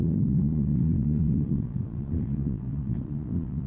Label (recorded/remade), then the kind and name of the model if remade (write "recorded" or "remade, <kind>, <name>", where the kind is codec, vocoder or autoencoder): remade, vocoder, Vocos